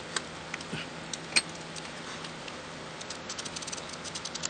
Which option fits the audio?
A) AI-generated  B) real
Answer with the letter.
B